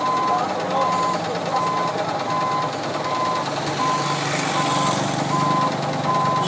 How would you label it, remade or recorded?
recorded